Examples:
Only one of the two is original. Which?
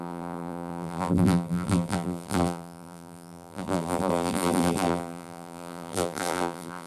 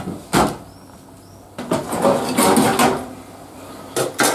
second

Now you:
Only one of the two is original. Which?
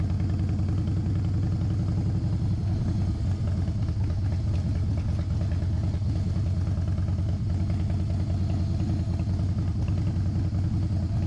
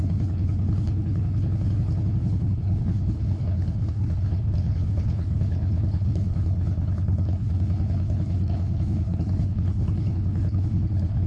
first